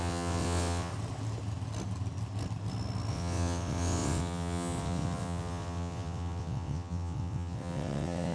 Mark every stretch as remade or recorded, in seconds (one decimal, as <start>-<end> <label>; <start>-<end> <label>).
0.0-0.9 remade; 0.9-3.1 recorded; 3.1-8.3 remade